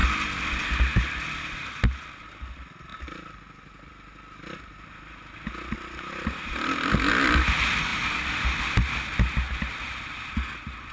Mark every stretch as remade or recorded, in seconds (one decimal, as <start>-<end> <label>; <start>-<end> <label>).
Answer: 0.0-10.9 recorded